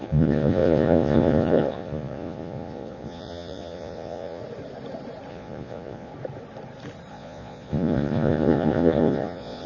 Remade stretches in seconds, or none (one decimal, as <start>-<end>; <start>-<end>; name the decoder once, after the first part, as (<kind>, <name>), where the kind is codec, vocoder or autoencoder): 0.0-4.4 (vocoder, Vocos); 5.3-6.1; 7.1-9.7